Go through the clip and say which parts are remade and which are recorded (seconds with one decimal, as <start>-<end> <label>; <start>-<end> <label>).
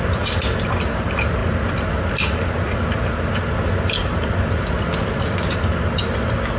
0.0-6.6 recorded